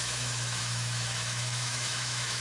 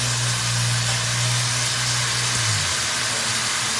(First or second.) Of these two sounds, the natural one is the second